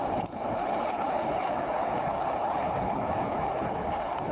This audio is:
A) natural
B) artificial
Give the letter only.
B